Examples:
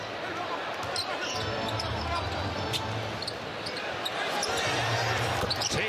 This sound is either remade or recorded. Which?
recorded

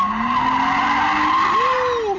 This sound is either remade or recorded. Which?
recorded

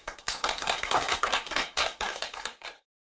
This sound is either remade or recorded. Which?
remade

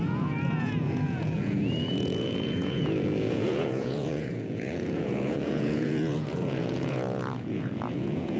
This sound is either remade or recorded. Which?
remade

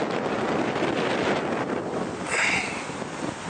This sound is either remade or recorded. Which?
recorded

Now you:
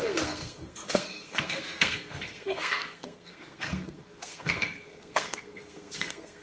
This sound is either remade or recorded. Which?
remade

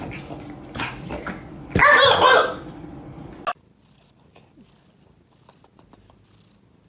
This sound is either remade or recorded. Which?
recorded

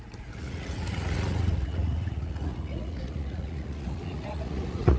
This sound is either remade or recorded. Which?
remade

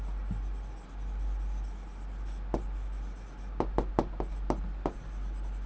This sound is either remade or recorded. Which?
recorded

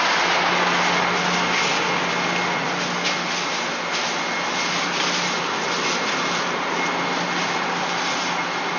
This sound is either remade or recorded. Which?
recorded